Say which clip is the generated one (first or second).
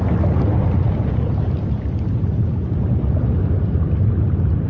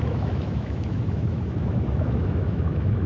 second